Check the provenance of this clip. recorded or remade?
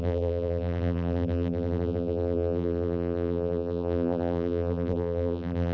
remade